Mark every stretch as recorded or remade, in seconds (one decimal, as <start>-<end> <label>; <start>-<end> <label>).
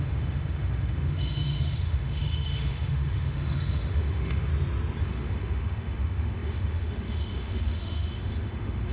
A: 0.0-4.5 remade; 4.5-5.0 recorded; 5.0-8.9 remade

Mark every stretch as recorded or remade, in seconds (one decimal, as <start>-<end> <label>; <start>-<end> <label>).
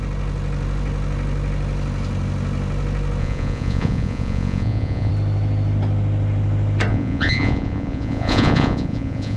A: 0.0-3.2 recorded; 3.2-5.1 remade; 5.1-6.9 recorded; 6.9-9.4 remade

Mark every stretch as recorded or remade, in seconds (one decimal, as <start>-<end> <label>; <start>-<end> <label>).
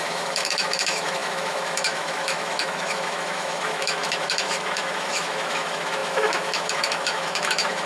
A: 0.0-7.9 remade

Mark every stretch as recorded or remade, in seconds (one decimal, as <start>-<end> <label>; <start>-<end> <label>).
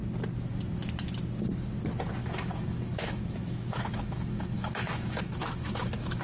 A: 0.0-2.2 recorded; 2.2-6.2 remade